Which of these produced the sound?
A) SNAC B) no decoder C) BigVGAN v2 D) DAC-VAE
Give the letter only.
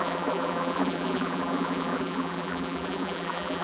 C